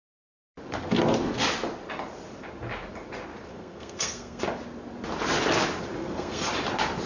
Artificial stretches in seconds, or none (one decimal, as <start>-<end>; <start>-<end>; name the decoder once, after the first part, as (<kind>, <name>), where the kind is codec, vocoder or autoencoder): 3.5-4.4 (codec, SNAC); 6.0-6.5